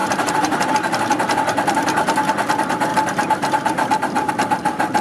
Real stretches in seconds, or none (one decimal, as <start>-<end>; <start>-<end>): 0.7-2.9; 4.3-5.0